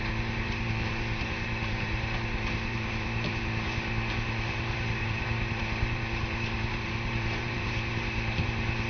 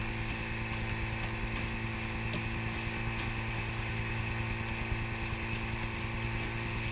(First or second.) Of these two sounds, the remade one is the first